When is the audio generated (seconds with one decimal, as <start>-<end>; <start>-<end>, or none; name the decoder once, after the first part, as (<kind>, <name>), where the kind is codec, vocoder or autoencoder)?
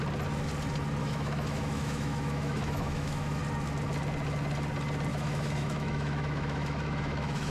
1.0-3.4 (autoencoder, DAC-VAE); 5.1-7.5